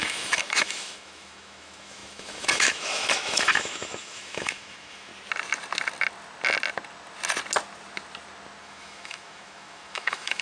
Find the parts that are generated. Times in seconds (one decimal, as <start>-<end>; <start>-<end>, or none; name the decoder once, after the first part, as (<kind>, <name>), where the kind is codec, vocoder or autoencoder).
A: 0.0-5.1 (autoencoder, DAC-VAE); 8.6-10.4

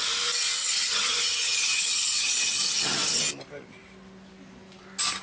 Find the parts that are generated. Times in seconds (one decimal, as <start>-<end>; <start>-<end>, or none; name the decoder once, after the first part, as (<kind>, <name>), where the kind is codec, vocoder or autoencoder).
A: 0.6-3.2 (vocoder, HiFi-GAN)

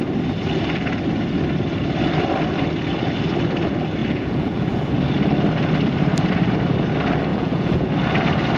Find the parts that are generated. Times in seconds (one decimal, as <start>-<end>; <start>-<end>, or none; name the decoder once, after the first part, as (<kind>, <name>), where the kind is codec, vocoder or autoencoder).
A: 4.0-4.9 (vocoder, Vocos); 7.3-7.9

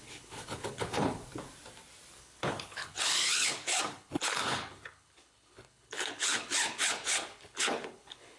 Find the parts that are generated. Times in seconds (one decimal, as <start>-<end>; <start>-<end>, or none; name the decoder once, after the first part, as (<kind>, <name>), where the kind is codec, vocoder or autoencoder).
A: 0.0-1.2 (codec, HILCodec); 2.2-8.4

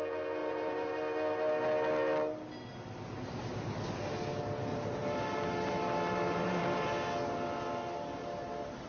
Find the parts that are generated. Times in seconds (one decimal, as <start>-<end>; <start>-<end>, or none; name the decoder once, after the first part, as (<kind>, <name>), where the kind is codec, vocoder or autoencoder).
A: 0.4-0.9 (vocoder, BigVGAN v2); 4.7-6.9

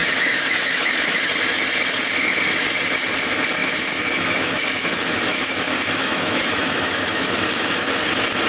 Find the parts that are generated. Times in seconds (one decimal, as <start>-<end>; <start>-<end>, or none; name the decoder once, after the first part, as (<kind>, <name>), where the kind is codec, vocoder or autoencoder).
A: 0.0-1.3 (autoencoder, DAC-VAE); 3.6-7.9

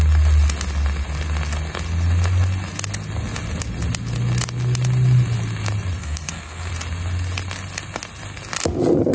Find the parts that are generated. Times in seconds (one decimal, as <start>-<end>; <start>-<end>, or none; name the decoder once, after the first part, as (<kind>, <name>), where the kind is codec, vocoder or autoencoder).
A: 6.0-6.7 (codec, SNAC)